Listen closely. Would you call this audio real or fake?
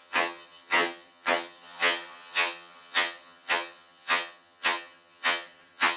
fake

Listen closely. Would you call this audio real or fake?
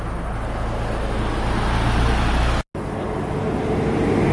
real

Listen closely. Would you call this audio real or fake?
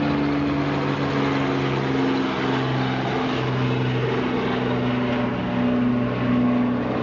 real